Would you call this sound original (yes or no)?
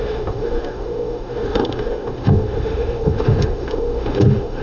no